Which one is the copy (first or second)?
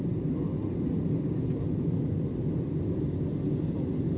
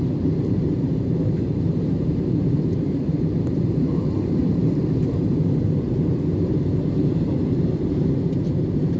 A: second